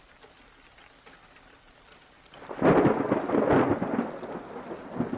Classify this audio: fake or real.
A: real